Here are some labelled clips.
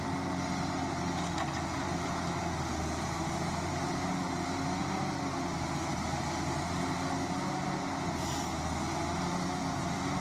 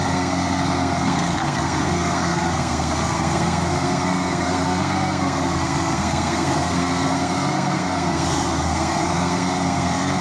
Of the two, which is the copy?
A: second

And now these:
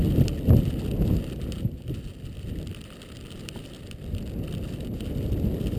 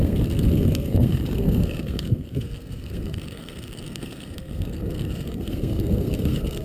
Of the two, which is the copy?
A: second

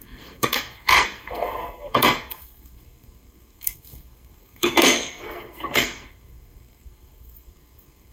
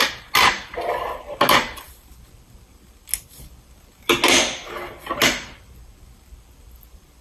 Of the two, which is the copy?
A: first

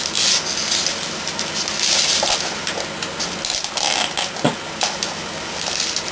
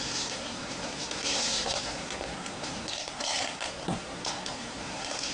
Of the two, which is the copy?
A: second